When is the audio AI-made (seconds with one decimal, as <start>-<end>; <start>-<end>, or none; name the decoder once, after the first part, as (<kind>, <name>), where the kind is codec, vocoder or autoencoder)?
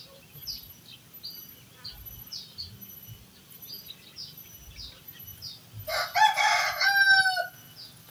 none